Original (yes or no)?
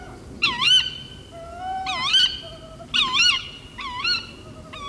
yes